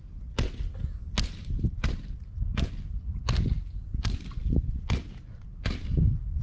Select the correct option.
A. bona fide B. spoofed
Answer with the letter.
A